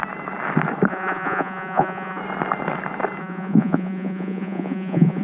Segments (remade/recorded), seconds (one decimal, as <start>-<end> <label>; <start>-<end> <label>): 0.0-0.9 recorded; 0.9-2.2 remade; 2.2-3.2 recorded; 3.2-5.2 remade